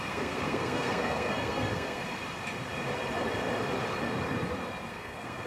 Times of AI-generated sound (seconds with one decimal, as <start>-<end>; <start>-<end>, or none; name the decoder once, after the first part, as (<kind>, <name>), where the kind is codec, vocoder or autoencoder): 0.0-2.0 (codec, SNAC); 4.9-5.5